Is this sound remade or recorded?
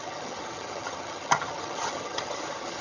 remade